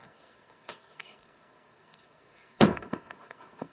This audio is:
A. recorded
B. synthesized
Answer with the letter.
B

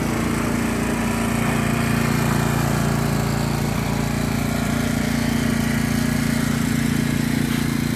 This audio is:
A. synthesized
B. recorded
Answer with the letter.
B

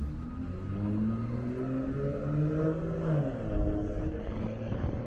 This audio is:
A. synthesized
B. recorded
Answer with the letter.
B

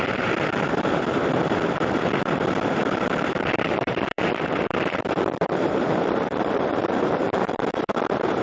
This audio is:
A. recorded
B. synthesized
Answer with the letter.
B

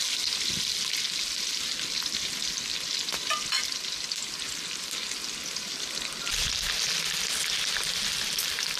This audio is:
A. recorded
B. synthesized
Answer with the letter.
A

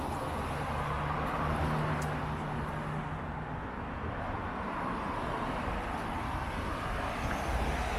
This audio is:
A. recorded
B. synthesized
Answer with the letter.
A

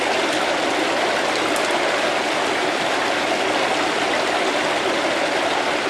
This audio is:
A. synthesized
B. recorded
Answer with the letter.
B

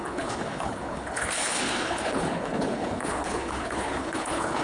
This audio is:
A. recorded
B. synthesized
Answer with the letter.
B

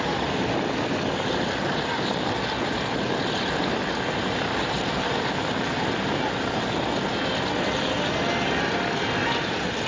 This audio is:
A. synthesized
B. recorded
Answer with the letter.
B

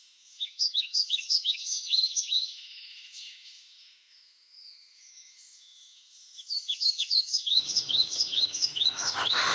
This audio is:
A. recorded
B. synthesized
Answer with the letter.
B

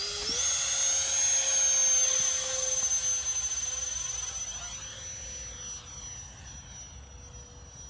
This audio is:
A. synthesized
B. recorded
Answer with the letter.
B